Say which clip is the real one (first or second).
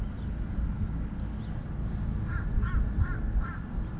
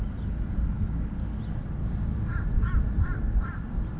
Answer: first